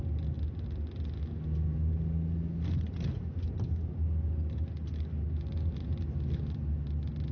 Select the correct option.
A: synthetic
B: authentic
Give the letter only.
B